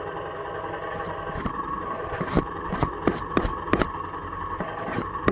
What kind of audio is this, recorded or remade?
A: remade